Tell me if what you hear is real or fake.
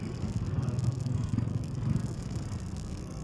fake